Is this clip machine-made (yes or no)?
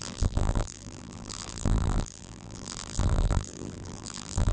yes